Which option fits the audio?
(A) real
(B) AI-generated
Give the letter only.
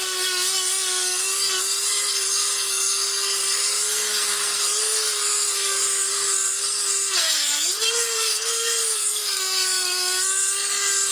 B